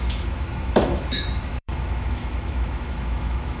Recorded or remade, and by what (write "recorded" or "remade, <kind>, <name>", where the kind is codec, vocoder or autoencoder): remade, autoencoder, DAC-VAE